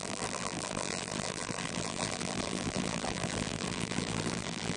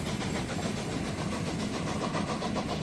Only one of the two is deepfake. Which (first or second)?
first